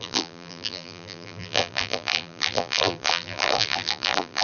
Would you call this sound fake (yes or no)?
yes